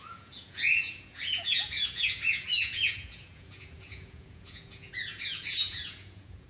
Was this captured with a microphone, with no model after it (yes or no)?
no